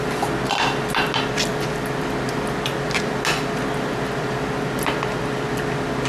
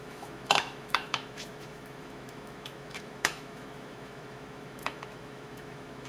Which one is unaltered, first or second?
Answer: first